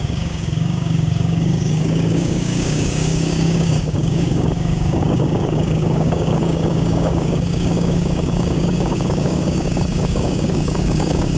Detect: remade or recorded remade